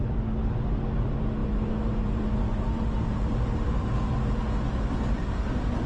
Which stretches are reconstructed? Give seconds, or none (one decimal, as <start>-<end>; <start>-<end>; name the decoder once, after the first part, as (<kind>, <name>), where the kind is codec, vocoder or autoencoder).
1.4-4.4 (vocoder, BigVGAN v2)